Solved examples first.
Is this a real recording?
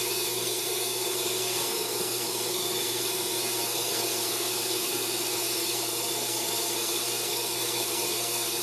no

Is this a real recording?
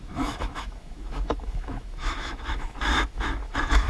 no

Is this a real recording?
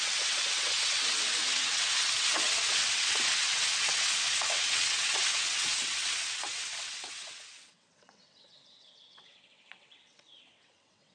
no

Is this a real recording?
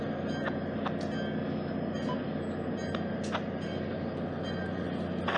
yes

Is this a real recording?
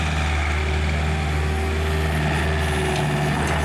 yes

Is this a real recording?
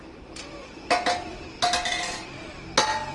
yes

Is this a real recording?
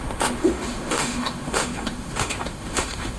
no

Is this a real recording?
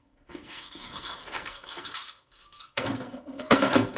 no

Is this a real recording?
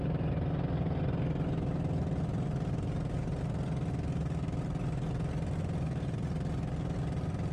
yes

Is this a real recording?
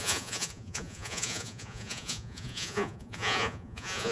no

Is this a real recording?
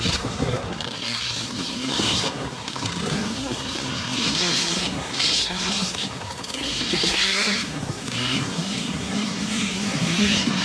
no